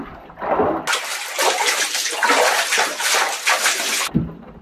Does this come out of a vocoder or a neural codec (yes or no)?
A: no